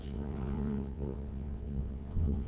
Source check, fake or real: fake